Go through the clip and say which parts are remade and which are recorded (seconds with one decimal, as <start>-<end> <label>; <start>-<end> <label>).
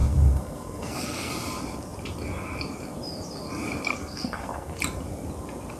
0.0-1.3 remade; 1.3-3.9 recorded; 3.9-4.8 remade; 4.8-5.8 recorded